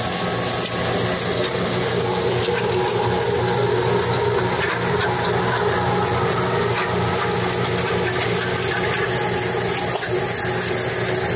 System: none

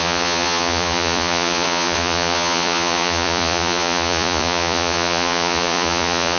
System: vocoder, Vocos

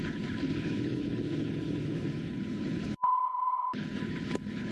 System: codec, HILCodec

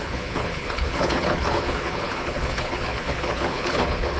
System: codec, HILCodec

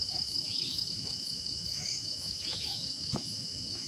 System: autoencoder, DAC-VAE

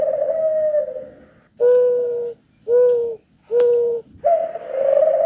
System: none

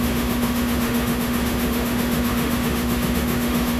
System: autoencoder, DAC-VAE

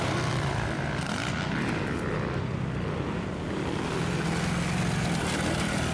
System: none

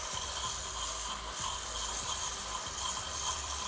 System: vocoder, BigVGAN v2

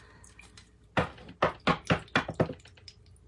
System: none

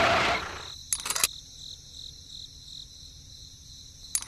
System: none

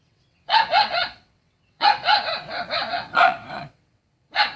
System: vocoder, WaveNeXt